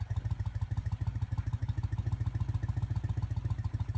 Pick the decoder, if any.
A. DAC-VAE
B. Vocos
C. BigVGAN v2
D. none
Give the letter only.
D